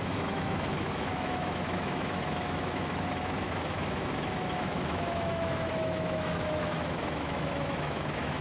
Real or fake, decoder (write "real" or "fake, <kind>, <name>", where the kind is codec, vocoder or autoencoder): fake, autoencoder, DAC-VAE